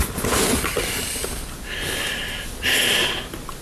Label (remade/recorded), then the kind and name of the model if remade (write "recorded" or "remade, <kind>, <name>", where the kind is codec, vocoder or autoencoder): recorded